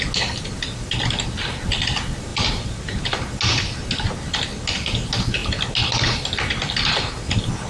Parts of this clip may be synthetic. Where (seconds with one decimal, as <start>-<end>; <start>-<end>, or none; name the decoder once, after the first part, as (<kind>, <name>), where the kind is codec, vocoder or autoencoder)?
2.3-3.0 (vocoder, BigVGAN v2)